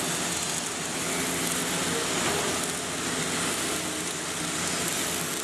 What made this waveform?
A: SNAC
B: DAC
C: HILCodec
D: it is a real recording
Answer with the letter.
D